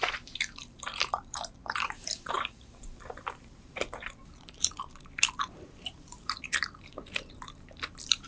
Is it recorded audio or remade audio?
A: remade